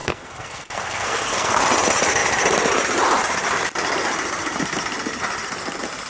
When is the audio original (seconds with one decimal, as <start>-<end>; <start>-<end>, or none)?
1.6-6.1